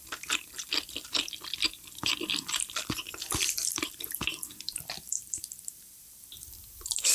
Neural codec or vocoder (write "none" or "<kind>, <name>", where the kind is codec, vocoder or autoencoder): vocoder, BigVGAN v2